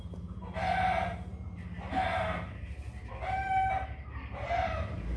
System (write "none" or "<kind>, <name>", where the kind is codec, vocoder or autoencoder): none